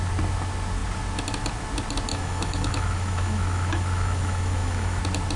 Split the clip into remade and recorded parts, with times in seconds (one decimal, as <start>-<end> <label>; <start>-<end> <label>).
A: 0.0-2.1 recorded; 2.1-5.0 remade; 5.0-5.4 recorded